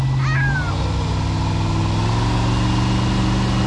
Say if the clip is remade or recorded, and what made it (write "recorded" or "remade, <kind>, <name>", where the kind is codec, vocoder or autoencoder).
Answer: recorded